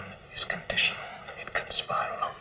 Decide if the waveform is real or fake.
real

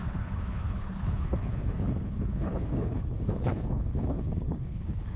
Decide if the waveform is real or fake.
fake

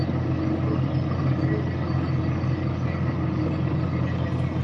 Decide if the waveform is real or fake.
real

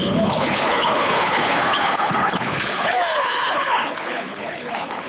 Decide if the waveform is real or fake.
fake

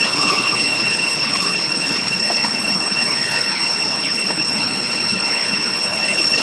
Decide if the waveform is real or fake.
fake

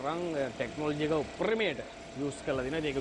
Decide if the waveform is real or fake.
real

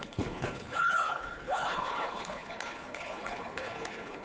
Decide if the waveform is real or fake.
fake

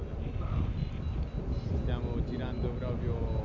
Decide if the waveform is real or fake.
real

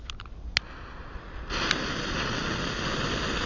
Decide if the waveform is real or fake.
real